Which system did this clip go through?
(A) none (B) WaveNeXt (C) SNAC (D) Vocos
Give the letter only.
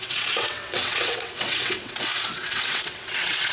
B